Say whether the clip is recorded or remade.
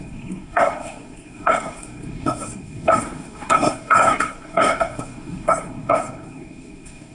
remade